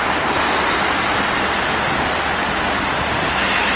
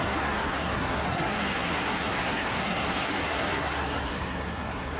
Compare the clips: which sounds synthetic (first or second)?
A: second